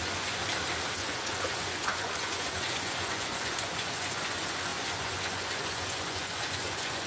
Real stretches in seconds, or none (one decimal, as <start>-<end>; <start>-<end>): 0.4-0.9